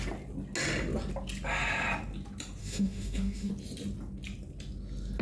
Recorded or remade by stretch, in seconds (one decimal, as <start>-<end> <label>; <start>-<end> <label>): 0.0-2.6 recorded; 2.6-3.5 remade; 3.5-5.2 recorded